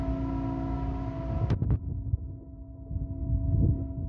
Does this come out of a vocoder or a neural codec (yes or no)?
no